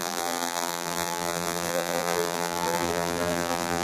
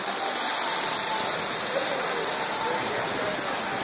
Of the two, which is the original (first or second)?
second